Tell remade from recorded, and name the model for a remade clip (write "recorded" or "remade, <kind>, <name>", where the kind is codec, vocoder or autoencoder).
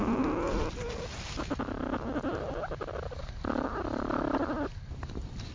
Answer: recorded